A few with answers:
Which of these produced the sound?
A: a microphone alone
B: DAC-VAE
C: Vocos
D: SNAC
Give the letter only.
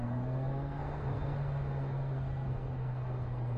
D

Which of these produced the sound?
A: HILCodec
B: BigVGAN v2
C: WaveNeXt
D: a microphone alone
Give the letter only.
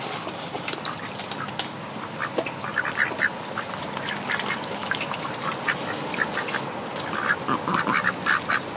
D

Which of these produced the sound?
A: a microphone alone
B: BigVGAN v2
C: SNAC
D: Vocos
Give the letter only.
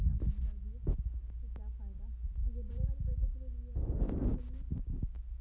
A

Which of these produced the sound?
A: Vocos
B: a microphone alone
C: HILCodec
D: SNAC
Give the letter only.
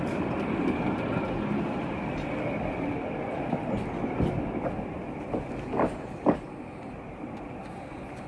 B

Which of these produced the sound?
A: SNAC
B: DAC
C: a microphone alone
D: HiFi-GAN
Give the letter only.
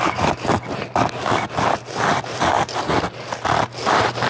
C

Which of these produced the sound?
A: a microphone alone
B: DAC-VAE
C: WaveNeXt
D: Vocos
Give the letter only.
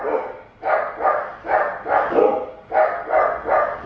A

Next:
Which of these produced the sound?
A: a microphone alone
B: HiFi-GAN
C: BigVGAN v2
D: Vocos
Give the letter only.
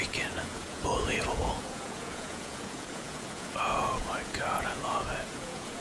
D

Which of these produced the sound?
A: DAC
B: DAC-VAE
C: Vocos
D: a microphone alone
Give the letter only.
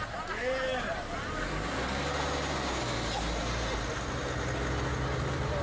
D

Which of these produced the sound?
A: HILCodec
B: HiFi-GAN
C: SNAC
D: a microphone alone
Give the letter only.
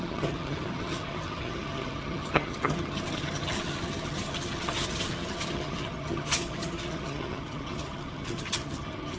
B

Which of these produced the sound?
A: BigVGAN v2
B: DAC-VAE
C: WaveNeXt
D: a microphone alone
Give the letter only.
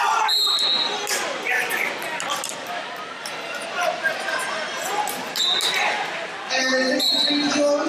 D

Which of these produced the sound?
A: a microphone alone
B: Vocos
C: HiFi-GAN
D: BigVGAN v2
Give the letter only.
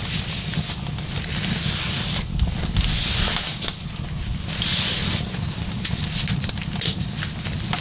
A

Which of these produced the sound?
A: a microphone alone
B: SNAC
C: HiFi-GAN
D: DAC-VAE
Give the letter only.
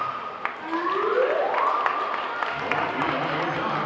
A